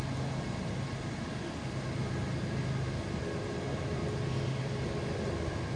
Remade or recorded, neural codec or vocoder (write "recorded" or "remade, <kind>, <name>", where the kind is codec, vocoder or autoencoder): recorded